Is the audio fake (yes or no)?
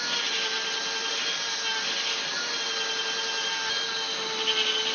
no